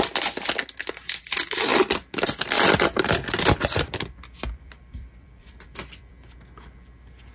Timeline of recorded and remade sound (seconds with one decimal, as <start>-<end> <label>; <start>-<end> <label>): 0.0-1.7 recorded; 1.7-6.1 remade; 6.1-7.3 recorded